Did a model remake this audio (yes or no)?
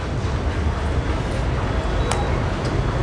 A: no